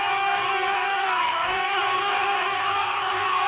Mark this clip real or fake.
fake